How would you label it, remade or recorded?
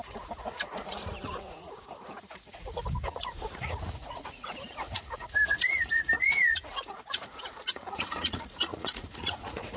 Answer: remade